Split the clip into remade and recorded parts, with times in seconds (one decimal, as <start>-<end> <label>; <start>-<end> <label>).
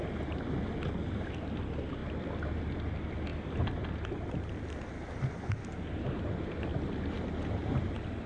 0.0-8.3 recorded